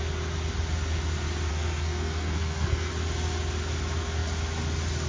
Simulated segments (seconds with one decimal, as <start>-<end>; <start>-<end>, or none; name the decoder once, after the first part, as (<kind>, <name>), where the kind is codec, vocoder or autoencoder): 1.5-2.9 (codec, SNAC)